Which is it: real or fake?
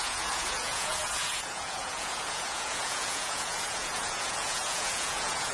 fake